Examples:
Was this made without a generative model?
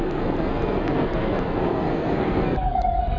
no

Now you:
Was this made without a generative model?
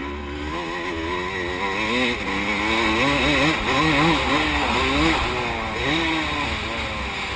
yes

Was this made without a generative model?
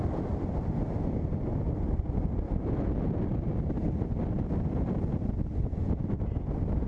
yes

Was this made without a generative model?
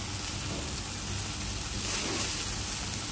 yes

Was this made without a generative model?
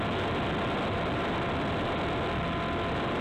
yes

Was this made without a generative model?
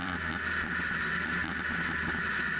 yes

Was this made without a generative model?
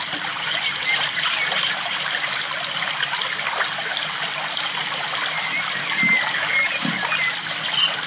yes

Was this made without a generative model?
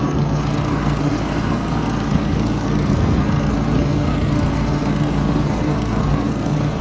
no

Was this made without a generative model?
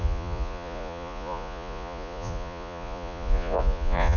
no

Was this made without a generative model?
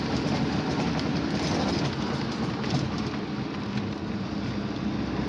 yes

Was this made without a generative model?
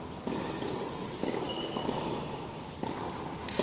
yes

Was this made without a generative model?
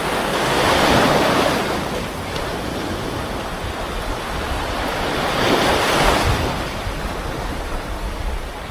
yes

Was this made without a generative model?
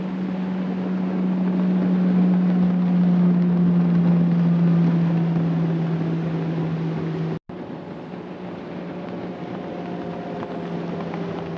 yes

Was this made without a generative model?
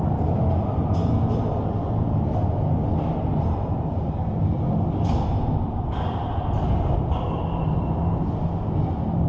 yes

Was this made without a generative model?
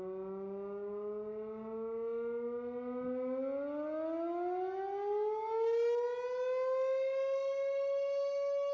yes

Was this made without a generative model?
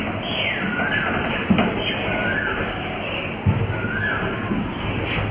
yes